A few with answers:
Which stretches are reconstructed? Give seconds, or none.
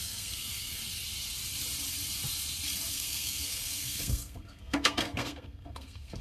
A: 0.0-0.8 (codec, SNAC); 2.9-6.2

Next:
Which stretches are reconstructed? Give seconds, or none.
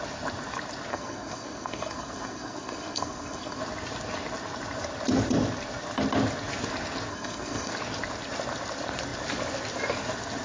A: 0.9-3.6 (codec, SNAC); 7.1-7.7